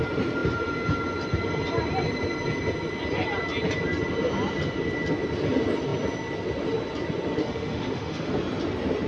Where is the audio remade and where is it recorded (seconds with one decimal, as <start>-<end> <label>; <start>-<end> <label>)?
0.0-7.4 recorded; 7.4-8.3 remade; 8.3-9.1 recorded